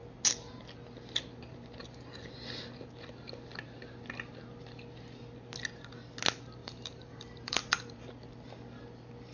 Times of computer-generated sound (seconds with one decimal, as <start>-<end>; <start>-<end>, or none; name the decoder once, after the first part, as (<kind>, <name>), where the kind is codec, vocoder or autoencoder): 6.6-8.1 (vocoder, BigVGAN v2)